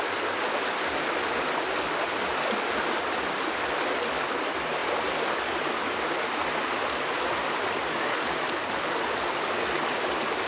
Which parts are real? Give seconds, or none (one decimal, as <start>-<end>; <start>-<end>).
0.0-10.5